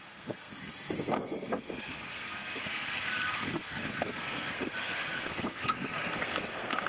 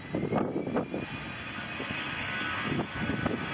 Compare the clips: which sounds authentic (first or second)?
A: second